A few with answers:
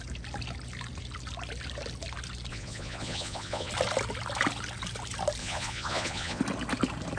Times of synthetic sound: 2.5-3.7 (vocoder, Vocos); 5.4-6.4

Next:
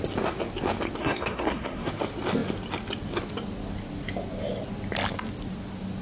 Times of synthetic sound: 1.0-1.9 (codec, SNAC)

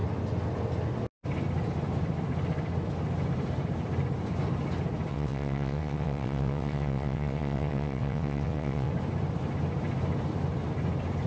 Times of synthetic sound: 5.1-8.9 (vocoder, WaveNeXt)

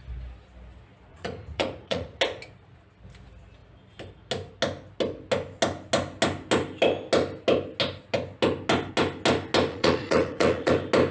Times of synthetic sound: 1.1-2.2 (vocoder, Vocos); 9.7-10.7

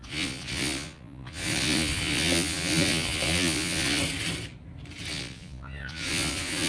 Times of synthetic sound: 0.0-4.0 (vocoder, Vocos); 5.1-6.7